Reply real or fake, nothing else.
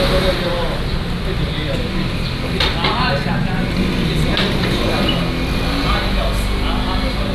real